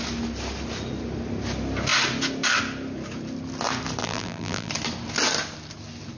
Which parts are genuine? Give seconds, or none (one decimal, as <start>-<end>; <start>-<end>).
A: 0.0-4.0; 4.7-6.2

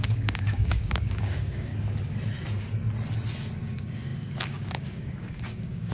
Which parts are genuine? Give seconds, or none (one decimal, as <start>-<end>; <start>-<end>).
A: 1.7-3.6

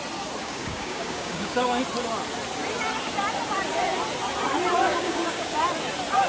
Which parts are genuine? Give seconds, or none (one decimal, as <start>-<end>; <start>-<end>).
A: 0.0-0.4; 1.8-4.9; 5.6-6.3

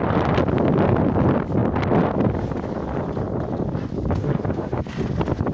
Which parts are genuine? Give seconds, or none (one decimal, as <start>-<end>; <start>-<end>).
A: 0.0-4.2; 4.8-5.5

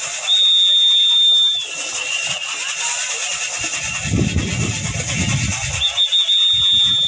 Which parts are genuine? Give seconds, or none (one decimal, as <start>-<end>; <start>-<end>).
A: 0.0-7.1